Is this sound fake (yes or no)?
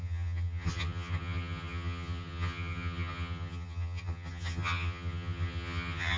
yes